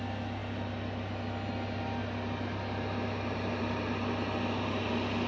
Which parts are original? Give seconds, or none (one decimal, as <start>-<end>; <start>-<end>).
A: 0.0-5.3